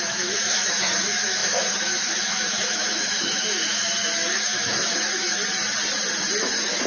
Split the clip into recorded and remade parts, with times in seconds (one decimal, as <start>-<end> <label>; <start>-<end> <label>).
0.0-5.4 remade; 5.4-6.4 recorded; 6.4-6.9 remade